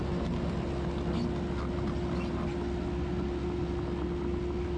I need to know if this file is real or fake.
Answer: real